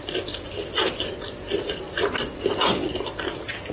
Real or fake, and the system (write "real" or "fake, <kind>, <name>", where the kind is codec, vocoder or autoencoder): real